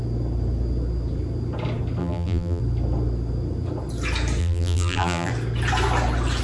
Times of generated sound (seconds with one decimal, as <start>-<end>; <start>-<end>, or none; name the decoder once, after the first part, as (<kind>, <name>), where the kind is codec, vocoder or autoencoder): 2.0-2.6 (vocoder, BigVGAN v2); 4.4-5.3